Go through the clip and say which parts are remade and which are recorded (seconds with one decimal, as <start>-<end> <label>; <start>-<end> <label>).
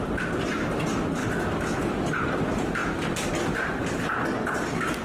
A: 0.0-5.0 recorded